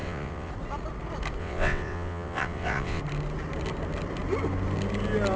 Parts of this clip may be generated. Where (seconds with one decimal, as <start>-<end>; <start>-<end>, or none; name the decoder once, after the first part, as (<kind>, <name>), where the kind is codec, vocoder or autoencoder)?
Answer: 0.0-0.5 (vocoder, WaveNeXt); 1.4-3.0